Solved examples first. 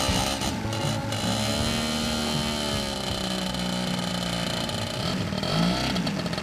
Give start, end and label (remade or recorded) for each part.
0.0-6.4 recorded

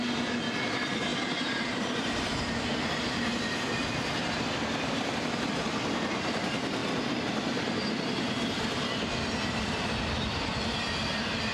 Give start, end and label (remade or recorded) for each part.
0.0-1.1 remade; 1.1-1.9 recorded; 1.9-6.8 remade; 6.8-8.0 recorded; 8.0-11.5 remade

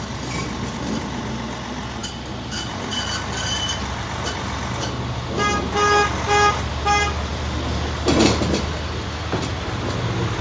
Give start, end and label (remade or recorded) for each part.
0.0-10.4 recorded

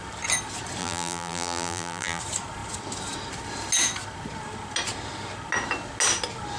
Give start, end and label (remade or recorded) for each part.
0.0-0.8 recorded; 0.8-2.2 remade; 2.2-6.6 recorded

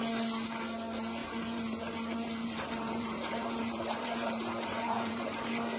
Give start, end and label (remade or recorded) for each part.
0.0-1.2 recorded; 1.2-1.8 remade; 1.8-2.4 recorded; 2.4-5.2 remade; 5.2-5.8 recorded

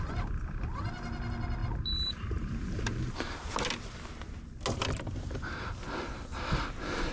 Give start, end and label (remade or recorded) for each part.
0.0-1.6 recorded; 1.6-3.6 remade; 3.6-7.1 recorded

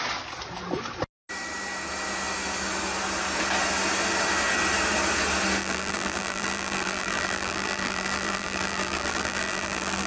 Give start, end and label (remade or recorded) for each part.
0.0-5.6 recorded; 5.6-10.1 remade